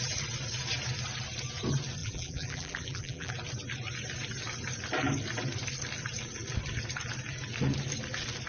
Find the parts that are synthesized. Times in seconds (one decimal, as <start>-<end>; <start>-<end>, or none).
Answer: 2.0-3.3